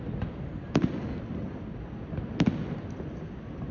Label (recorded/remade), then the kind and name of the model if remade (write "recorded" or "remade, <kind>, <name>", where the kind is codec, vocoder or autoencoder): recorded